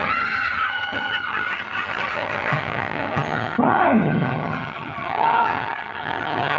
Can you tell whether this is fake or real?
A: fake